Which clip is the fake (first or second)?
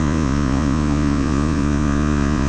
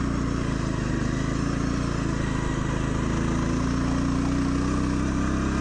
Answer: first